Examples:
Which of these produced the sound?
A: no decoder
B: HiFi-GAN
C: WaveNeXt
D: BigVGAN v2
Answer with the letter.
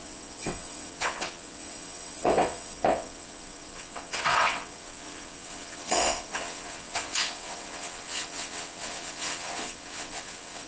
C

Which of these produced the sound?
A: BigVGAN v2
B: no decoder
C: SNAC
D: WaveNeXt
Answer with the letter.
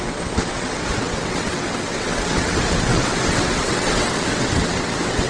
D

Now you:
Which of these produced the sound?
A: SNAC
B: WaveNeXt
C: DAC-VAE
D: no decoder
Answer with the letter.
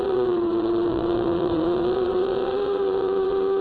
B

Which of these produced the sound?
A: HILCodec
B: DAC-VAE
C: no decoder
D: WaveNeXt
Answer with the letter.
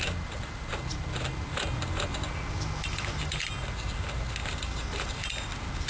C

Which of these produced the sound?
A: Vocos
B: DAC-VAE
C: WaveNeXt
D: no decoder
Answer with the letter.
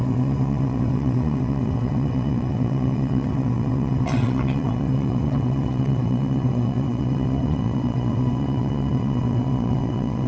C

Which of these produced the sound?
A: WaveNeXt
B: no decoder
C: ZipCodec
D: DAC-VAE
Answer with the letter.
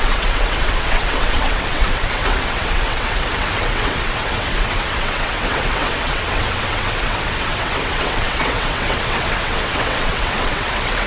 A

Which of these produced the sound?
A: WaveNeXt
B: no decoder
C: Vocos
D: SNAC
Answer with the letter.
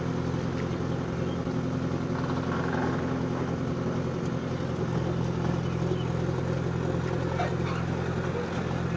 B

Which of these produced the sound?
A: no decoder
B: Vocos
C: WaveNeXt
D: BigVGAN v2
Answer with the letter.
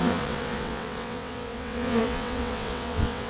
C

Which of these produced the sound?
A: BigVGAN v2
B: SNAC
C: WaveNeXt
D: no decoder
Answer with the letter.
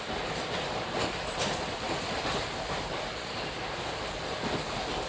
D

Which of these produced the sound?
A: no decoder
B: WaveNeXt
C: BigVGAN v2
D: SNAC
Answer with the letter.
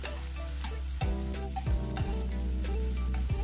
A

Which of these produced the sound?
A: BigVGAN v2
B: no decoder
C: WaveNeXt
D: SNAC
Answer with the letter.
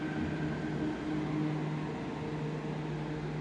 B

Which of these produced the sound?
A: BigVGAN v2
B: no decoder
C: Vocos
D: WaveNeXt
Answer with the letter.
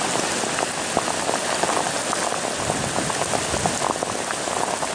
B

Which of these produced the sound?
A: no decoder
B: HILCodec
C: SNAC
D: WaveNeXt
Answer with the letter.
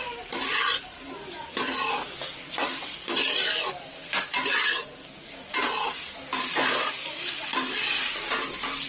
A